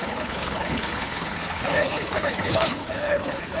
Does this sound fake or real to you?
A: fake